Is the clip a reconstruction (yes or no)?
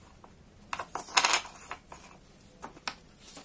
no